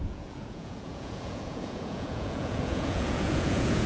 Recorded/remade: remade